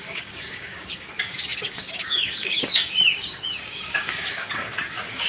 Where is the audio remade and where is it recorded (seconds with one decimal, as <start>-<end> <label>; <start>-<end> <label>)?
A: 0.0-5.3 remade